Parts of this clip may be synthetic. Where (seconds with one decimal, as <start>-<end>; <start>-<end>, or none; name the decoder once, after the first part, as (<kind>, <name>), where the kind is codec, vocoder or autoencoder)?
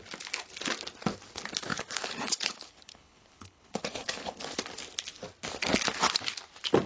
1.7-4.4 (codec, HILCodec)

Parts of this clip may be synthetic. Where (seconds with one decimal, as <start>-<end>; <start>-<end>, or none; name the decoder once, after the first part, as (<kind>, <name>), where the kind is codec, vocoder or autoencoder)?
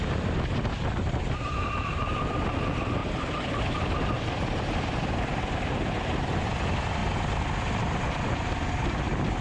none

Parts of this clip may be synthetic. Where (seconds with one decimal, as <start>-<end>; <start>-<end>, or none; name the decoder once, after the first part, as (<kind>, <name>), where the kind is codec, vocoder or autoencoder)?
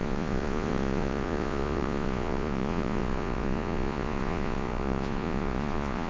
0.0-6.1 (vocoder, Vocos)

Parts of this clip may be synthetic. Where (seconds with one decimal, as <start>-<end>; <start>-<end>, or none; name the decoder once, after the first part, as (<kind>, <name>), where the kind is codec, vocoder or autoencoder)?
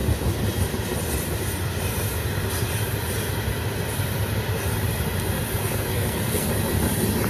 5.5-6.5 (codec, SNAC)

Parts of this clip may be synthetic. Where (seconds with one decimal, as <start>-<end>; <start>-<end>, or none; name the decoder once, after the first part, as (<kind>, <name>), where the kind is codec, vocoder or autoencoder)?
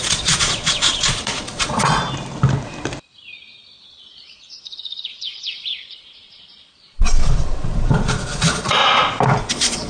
0.0-2.0 (vocoder, Vocos); 3.8-8.8; 9.4-9.9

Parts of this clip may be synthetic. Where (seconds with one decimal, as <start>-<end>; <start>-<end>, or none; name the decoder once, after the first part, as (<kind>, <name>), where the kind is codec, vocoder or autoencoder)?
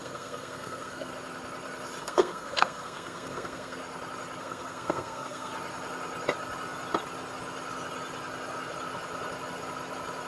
0.0-1.1 (codec, SNAC); 2.0-3.8; 4.4-5.5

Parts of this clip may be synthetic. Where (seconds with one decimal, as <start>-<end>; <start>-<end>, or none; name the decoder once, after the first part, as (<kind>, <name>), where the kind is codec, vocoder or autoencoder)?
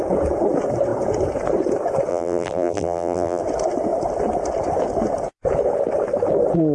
2.1-3.4 (vocoder, BigVGAN v2)